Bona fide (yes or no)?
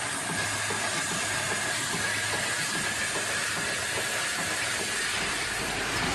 yes